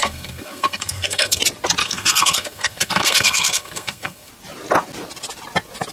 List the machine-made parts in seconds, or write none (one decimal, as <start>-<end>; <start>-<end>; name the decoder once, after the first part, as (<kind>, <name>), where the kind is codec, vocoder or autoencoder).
0.0-1.4 (codec, SNAC); 1.8-4.3